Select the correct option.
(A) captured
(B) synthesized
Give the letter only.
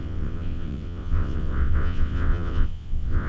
B